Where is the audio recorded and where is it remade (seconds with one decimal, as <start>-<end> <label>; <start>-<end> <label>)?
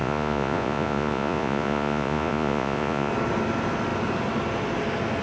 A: 0.0-3.1 remade; 3.1-5.2 recorded